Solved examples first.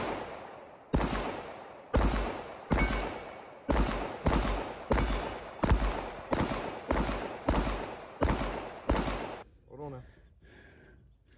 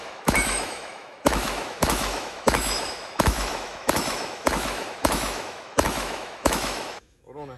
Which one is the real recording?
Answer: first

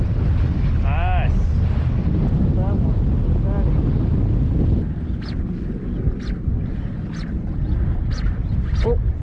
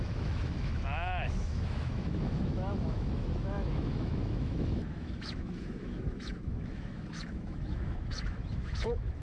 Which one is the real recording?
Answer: first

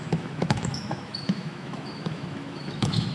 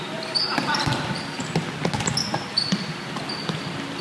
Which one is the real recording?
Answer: second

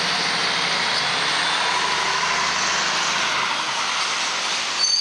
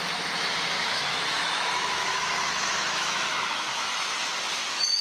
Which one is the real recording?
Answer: first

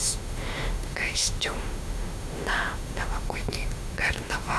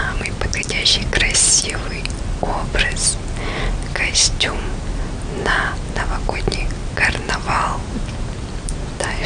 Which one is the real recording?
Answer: second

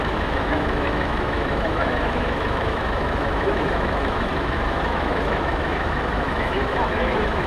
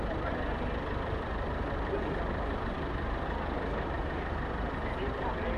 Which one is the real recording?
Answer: second